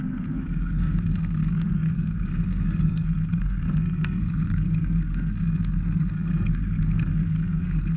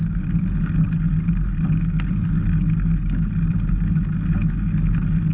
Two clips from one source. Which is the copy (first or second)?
first